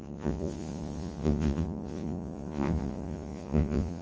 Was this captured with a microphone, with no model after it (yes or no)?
no